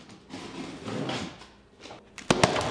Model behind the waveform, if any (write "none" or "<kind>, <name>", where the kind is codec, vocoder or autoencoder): none